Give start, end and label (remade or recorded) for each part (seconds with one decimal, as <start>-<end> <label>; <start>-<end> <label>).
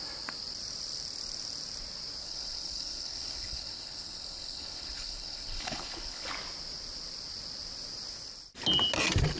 0.0-2.2 recorded; 2.2-6.3 remade; 6.3-9.4 recorded